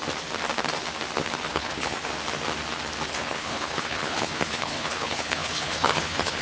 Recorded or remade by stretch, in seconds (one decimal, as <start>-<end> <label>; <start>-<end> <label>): 0.0-1.5 recorded; 1.5-2.1 remade; 2.1-3.1 recorded; 3.1-6.4 remade